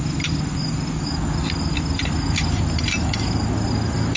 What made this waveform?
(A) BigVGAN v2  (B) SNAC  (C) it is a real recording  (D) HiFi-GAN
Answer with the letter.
C